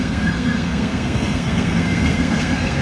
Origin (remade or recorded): remade